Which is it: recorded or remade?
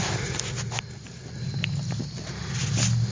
recorded